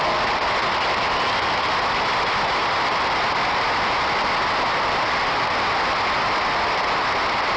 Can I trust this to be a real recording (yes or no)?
yes